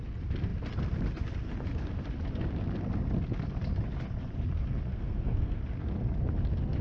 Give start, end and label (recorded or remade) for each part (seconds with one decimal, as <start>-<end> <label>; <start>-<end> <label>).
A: 0.0-4.9 recorded; 4.9-5.6 remade; 5.6-6.8 recorded